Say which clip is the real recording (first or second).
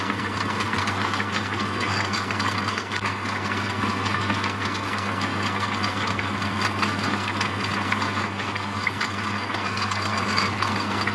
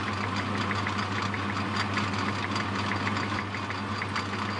second